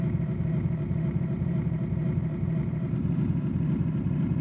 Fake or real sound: fake